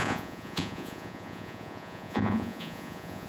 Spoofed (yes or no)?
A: yes